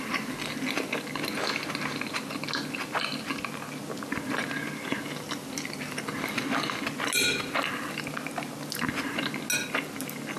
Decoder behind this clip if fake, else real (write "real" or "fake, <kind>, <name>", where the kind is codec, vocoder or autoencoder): real